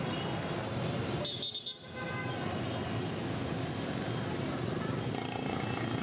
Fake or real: real